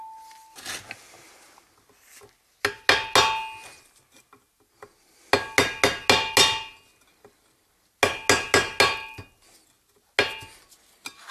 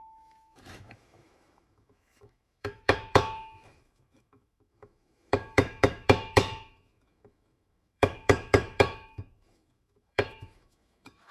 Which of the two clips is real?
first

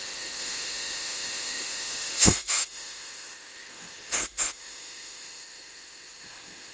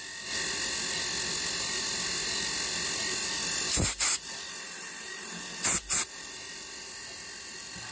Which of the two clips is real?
second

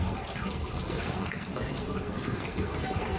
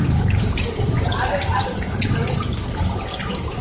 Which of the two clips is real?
second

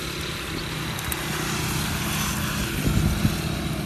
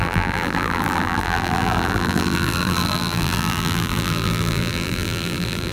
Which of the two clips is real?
first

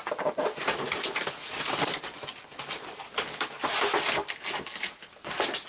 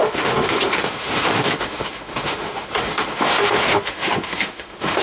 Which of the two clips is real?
first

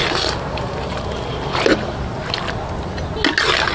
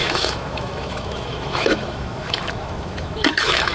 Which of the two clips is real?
first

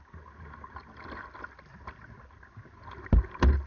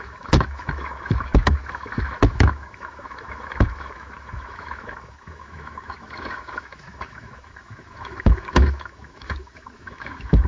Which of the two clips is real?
first